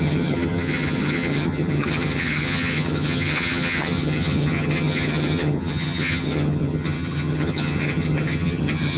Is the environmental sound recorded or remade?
remade